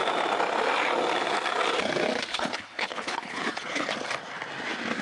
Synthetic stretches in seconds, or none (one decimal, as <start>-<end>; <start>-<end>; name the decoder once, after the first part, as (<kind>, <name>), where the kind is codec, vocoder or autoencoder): 2.3-3.9 (codec, HILCodec)